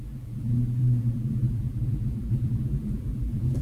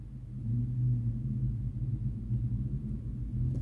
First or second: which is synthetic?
first